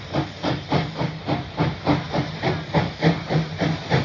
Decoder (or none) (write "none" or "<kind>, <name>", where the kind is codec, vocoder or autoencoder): none